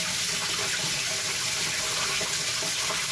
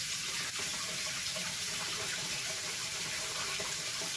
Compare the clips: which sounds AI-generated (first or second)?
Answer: second